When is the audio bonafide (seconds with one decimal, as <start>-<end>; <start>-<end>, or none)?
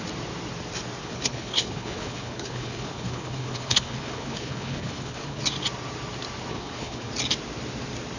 0.0-1.0; 5.4-6.5; 7.1-8.2